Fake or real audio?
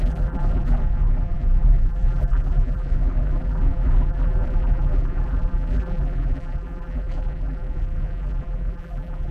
fake